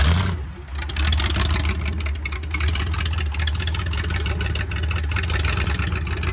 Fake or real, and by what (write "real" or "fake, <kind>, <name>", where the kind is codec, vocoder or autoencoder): real